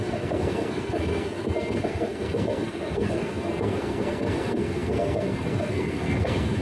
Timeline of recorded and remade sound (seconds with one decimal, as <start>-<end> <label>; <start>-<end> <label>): 0.0-6.6 remade